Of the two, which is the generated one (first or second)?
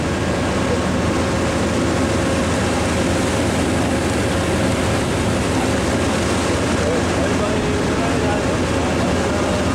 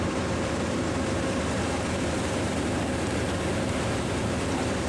second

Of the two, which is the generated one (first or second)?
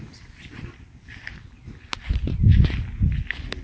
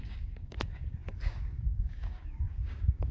second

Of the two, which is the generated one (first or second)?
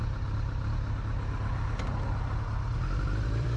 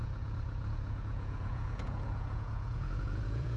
second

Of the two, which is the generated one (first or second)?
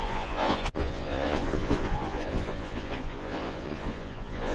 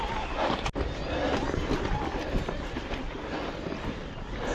first